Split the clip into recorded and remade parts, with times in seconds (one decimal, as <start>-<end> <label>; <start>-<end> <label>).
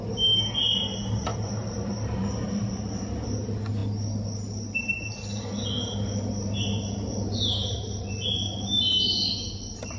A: 0.0-1.3 recorded; 1.3-2.7 remade; 2.7-10.0 recorded